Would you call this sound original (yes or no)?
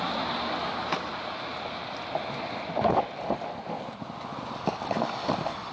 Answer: yes